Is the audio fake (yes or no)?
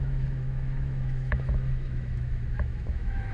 yes